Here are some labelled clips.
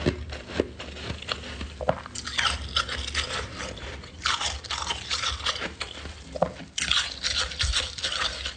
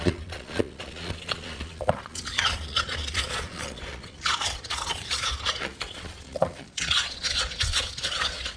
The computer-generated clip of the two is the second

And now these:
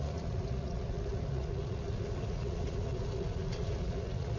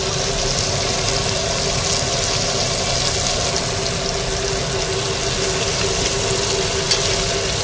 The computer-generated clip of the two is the first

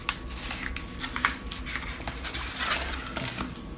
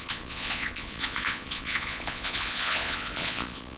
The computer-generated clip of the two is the second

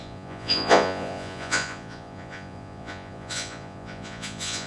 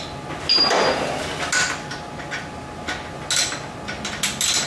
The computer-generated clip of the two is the first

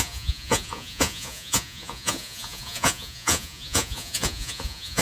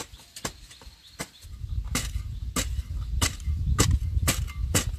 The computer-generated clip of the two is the first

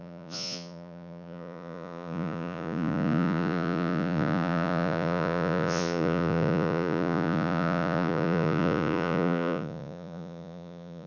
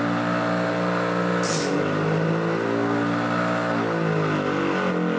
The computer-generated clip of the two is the first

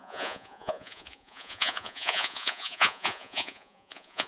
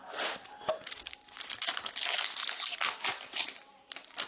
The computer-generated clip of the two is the first